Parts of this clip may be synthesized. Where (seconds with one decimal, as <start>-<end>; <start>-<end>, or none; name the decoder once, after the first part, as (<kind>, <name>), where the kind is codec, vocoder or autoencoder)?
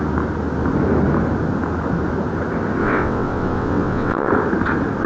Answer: 2.8-4.3 (vocoder, WaveNeXt)